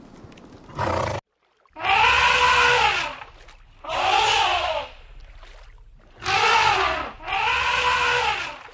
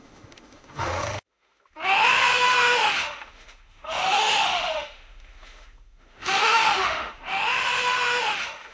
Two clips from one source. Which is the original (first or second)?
first